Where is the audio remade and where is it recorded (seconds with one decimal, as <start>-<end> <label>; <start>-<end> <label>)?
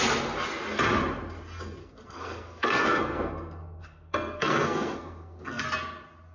0.0-1.8 recorded; 1.8-5.6 remade; 5.6-6.3 recorded